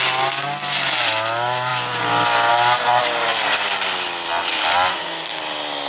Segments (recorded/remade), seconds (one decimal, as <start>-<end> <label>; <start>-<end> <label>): 0.0-4.9 recorded; 4.9-5.4 remade; 5.4-5.9 recorded